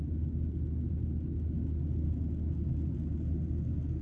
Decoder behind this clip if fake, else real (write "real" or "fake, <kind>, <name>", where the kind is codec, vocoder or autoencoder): real